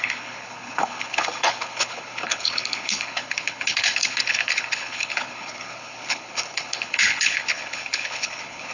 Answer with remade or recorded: remade